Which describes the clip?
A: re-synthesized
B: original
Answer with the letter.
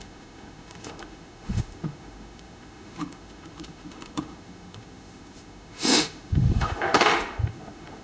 A